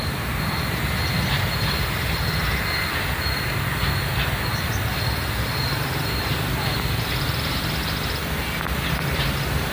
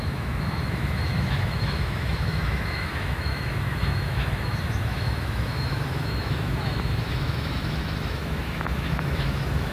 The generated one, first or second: second